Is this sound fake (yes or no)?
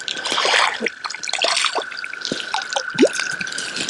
no